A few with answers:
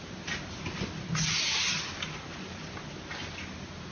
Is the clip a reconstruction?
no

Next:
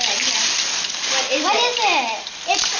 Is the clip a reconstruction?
no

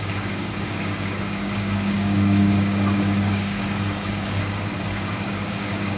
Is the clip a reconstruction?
yes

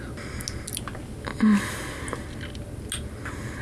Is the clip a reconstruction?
no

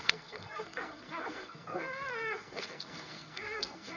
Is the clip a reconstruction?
yes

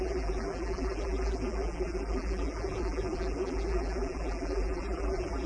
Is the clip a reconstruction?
yes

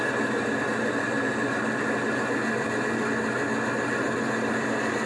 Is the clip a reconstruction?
no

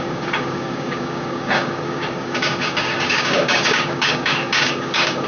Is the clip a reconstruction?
yes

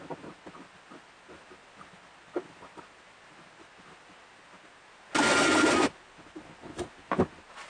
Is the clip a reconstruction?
no